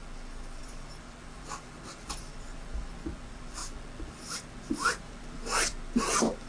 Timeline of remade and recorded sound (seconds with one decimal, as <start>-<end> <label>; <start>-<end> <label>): 0.0-0.6 recorded; 0.6-3.6 remade; 3.6-4.1 recorded; 4.1-6.5 remade